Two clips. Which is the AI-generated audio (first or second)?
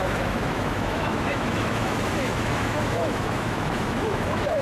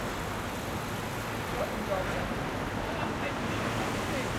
first